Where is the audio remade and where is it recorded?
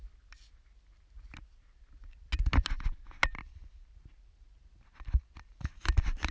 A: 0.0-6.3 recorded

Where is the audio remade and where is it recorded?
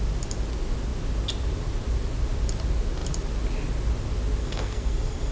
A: 0.0-4.4 recorded; 4.4-5.3 remade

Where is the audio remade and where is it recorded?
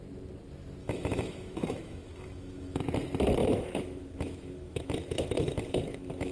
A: 0.0-0.8 recorded; 0.8-2.8 remade; 2.8-3.4 recorded; 3.4-6.3 remade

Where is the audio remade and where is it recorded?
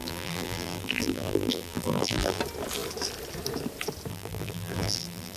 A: 0.0-2.4 remade; 2.4-4.1 recorded; 4.1-5.4 remade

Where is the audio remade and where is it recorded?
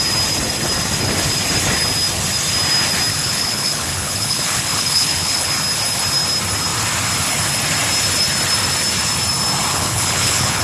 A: 0.0-3.1 recorded; 3.1-5.5 remade; 5.5-9.7 recorded; 9.7-10.6 remade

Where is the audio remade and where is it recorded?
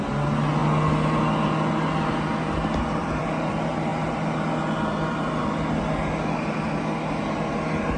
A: 0.0-3.0 recorded; 3.0-3.5 remade; 3.5-8.0 recorded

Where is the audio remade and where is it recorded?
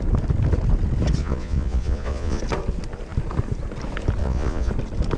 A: 0.0-1.2 recorded; 1.2-2.4 remade; 2.4-4.2 recorded; 4.2-4.7 remade; 4.7-5.2 recorded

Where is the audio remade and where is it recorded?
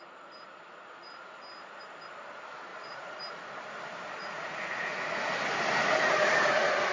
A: 0.0-2.7 recorded; 2.7-3.2 remade; 3.2-4.2 recorded; 4.2-5.3 remade; 5.3-6.9 recorded